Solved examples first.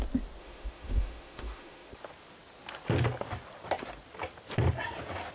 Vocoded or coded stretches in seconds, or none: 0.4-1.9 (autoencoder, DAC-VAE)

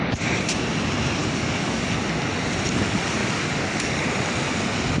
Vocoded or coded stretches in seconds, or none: 1.2-1.9 (codec, DAC); 3.2-4.0

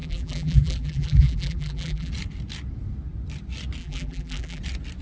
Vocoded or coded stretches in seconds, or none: 0.0-2.1 (vocoder, BigVGAN v2); 3.8-4.6

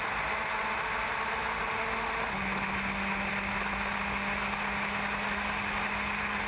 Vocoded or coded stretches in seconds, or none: none

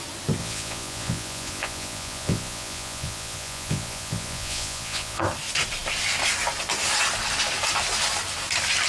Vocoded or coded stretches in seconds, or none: 0.4-5.2 (vocoder, Vocos)